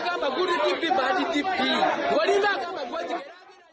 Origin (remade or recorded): recorded